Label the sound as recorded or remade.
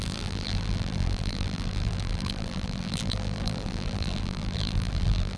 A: remade